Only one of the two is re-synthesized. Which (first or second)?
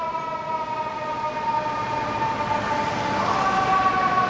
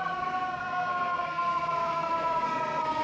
second